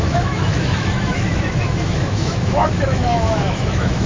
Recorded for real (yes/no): no